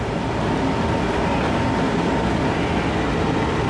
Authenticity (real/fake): real